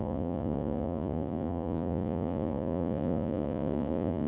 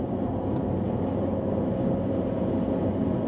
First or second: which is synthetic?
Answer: first